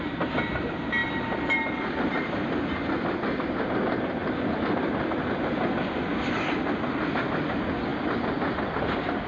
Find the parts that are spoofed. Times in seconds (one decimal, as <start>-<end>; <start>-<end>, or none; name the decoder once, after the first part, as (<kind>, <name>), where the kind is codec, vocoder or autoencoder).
none